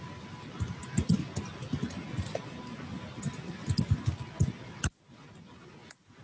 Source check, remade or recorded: recorded